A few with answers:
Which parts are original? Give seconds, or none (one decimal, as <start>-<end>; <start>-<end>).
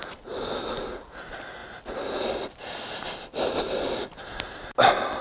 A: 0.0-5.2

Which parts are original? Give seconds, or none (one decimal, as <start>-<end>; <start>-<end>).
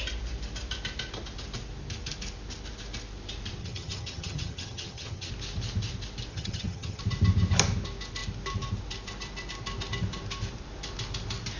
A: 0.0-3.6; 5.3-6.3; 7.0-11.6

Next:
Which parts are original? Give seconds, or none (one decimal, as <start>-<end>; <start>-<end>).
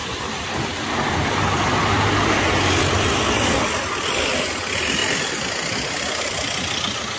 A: 0.0-7.2